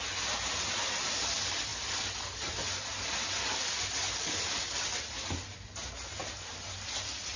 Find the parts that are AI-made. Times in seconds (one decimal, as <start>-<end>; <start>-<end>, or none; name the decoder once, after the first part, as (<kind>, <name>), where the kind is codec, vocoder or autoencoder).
none